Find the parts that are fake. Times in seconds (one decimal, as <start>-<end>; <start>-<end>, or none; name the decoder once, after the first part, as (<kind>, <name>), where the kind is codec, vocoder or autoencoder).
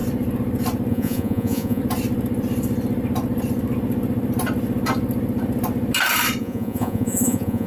0.9-1.8 (vocoder, Vocos); 6.4-7.7